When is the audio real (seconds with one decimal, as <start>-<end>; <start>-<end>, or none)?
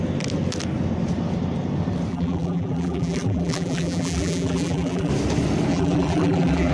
0.0-2.1; 5.1-5.7